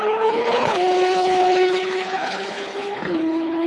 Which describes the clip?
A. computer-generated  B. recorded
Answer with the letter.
A